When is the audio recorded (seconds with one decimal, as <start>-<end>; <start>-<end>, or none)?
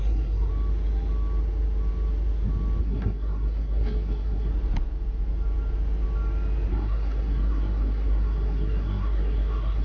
0.5-2.8; 4.5-6.7